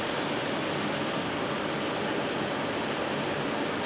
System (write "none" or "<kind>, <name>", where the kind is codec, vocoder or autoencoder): none